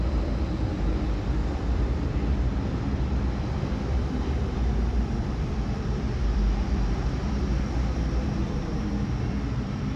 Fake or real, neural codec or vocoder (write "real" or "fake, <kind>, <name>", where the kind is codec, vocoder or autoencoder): fake, vocoder, BigVGAN v2